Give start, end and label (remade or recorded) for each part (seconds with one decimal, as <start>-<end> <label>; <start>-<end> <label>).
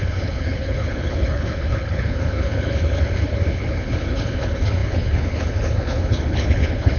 0.0-7.0 remade